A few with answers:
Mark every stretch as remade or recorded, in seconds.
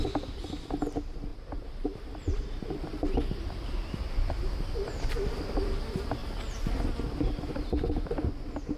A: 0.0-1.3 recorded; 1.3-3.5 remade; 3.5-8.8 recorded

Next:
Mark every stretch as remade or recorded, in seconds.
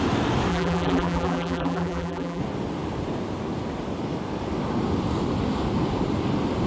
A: 0.0-0.5 recorded; 0.5-2.4 remade; 2.4-6.7 recorded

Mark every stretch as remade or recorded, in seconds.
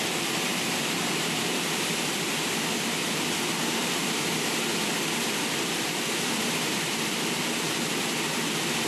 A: 0.0-8.9 remade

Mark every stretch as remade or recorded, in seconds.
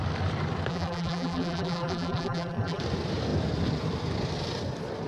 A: 0.0-0.7 recorded; 0.7-2.8 remade; 2.8-5.1 recorded